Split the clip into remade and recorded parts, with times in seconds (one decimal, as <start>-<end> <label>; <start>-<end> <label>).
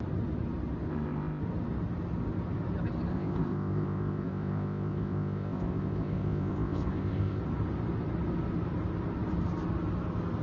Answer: 0.0-0.9 recorded; 0.9-1.4 remade; 1.4-3.1 recorded; 3.1-7.4 remade; 7.4-10.4 recorded